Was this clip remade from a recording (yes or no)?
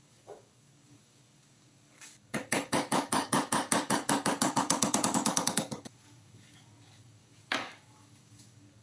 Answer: yes